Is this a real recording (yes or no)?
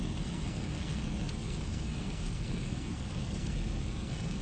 no